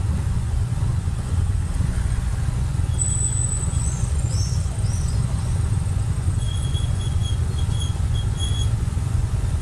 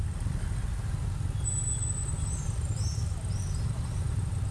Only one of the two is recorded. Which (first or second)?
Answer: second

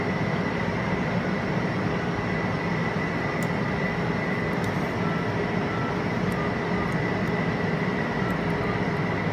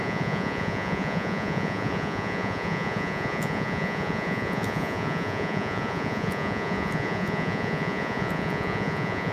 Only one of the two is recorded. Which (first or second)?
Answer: first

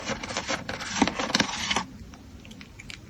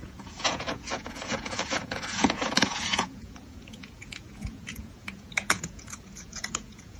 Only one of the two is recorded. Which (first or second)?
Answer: first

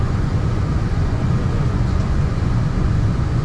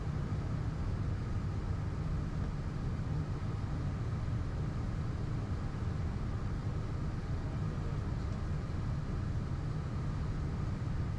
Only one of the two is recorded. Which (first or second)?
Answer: second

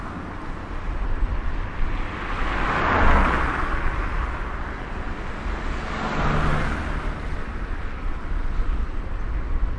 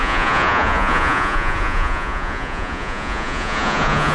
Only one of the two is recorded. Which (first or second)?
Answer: first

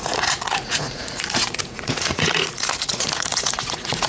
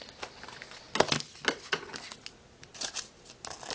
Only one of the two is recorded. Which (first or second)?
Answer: second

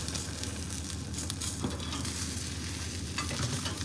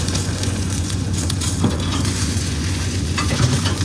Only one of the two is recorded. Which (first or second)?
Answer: first